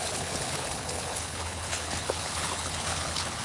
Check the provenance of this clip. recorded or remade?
remade